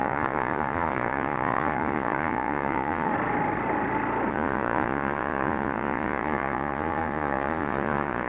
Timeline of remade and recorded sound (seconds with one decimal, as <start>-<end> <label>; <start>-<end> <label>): 0.0-3.1 remade; 3.1-4.3 recorded; 4.3-8.3 remade